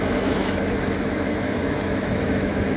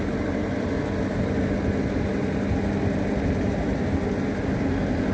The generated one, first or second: first